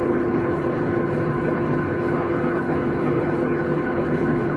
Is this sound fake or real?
fake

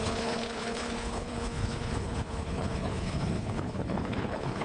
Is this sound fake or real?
fake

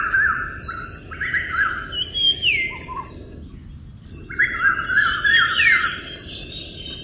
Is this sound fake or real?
real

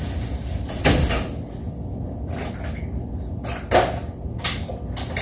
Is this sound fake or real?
real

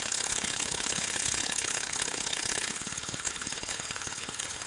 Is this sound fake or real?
fake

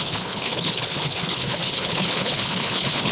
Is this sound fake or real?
fake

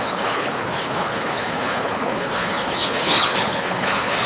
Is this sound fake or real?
fake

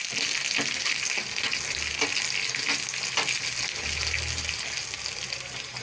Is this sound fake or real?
real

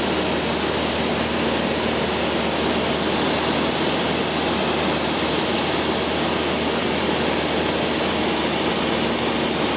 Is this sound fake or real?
real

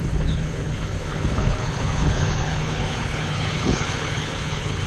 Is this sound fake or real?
fake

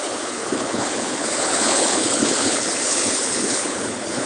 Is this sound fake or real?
fake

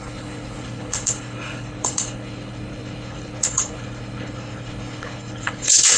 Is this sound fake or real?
fake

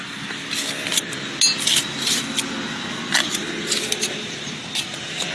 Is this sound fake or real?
real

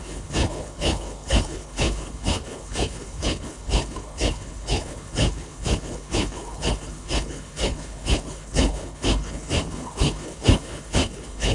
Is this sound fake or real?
fake